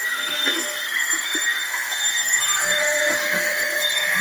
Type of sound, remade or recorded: remade